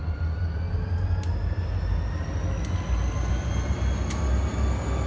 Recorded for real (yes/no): yes